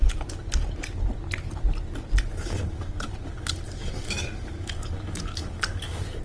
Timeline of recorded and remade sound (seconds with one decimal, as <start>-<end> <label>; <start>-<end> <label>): 0.0-2.3 recorded; 2.3-6.2 remade